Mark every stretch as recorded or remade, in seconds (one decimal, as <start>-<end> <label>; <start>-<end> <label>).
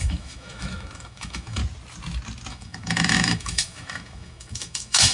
0.0-1.6 remade; 1.6-2.5 recorded; 2.5-5.1 remade